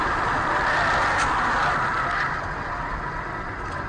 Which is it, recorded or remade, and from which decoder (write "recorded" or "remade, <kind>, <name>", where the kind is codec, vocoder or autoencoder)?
recorded